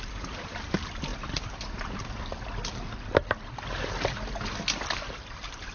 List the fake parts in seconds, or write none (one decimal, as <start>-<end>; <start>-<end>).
none